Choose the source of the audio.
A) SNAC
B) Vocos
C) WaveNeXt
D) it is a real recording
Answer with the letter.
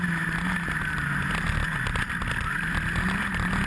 D